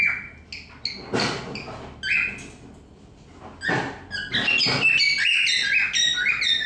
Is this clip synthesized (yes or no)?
no